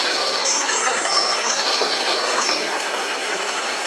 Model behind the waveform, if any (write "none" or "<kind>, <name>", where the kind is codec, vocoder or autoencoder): codec, SNAC